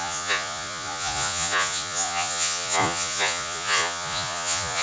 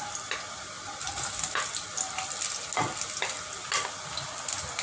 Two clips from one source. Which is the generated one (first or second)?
first